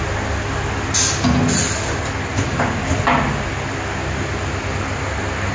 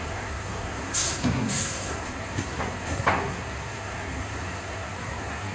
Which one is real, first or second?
first